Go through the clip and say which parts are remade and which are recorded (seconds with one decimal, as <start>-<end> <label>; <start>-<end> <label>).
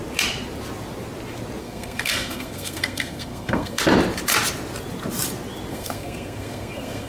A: 0.0-1.6 recorded; 1.6-3.8 remade; 3.8-5.7 recorded; 5.7-7.1 remade